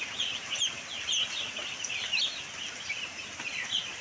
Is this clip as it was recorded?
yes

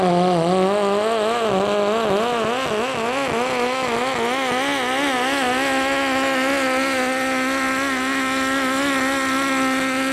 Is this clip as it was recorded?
yes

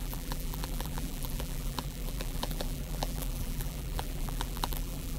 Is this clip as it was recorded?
no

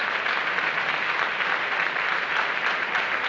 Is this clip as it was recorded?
no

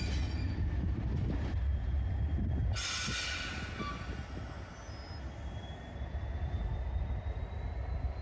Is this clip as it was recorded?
yes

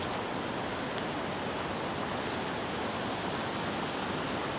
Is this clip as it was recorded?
yes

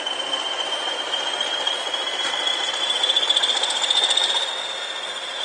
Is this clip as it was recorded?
yes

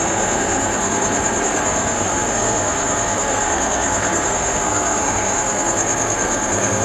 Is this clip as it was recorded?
no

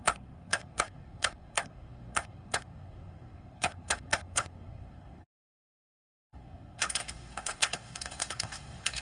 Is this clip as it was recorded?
no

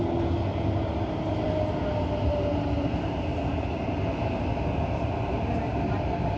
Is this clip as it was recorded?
yes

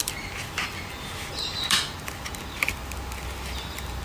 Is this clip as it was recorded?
yes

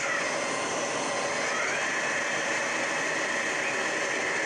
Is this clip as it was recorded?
yes